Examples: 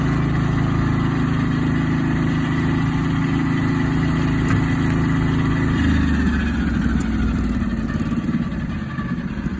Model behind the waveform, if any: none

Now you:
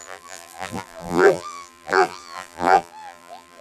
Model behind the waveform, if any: vocoder, BigVGAN v2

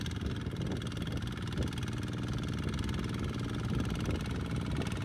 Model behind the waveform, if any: none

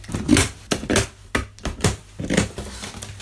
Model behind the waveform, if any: none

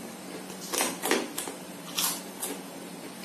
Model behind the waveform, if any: none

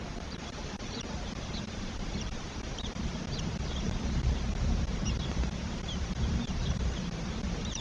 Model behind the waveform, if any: vocoder, BigVGAN v2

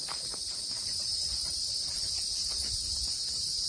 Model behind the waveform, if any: vocoder, BigVGAN v2